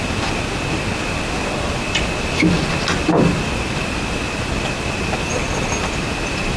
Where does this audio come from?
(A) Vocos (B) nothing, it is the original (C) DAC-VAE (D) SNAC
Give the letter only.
B